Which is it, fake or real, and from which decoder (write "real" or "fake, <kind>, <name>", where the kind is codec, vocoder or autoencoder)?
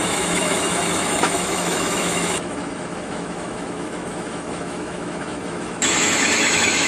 fake, autoencoder, DAC-VAE